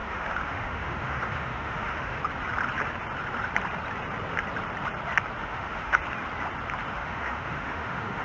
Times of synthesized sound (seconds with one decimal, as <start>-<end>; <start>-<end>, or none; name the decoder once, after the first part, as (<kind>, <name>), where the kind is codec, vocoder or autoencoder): 0.0-2.2 (autoencoder, DAC-VAE); 5.4-6.0; 6.9-8.2